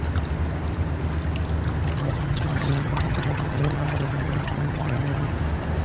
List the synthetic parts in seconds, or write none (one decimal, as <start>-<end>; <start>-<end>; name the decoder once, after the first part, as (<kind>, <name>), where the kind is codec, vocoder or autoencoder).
2.0-5.3 (vocoder, HiFi-GAN)